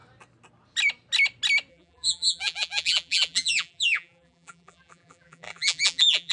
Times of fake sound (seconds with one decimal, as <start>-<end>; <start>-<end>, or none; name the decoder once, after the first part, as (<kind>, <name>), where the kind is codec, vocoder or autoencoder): 1.7-6.3 (vocoder, BigVGAN v2)

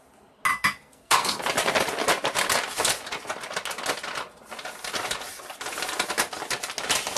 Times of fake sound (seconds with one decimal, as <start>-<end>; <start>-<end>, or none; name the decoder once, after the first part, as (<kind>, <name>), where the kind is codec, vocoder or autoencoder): 0.5-1.4 (codec, SNAC)

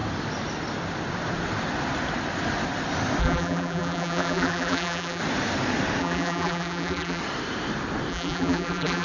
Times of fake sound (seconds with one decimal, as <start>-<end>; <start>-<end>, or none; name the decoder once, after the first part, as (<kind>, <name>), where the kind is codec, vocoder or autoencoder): 3.2-5.2 (vocoder, BigVGAN v2); 6.0-7.2; 8.1-9.0